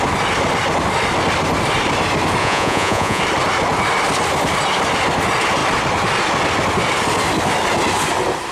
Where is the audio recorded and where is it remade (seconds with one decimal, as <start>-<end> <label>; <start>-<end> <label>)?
0.0-2.4 recorded; 2.4-3.2 remade; 3.2-8.5 recorded